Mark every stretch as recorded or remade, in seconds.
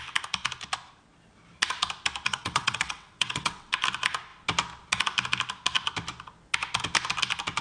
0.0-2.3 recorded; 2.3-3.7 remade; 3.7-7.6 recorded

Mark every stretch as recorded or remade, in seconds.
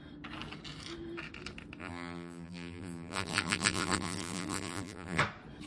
0.0-1.8 recorded; 1.8-5.2 remade; 5.2-5.7 recorded